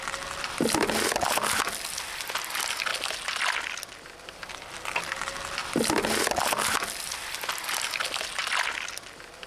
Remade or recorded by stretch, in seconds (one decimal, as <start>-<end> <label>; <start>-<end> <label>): 0.0-9.5 recorded